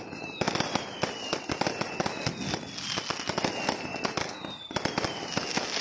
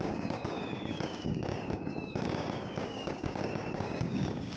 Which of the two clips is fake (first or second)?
second